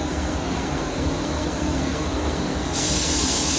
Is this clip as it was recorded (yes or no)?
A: no